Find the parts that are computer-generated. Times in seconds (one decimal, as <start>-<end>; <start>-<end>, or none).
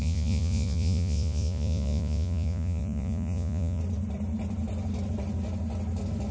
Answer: 0.0-3.8